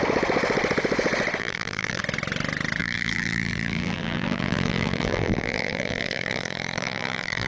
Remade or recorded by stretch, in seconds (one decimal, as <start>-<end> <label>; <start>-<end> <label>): 0.0-1.4 recorded; 1.4-2.0 remade; 2.0-2.8 recorded; 2.8-7.5 remade